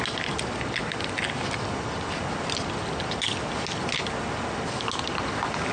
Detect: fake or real real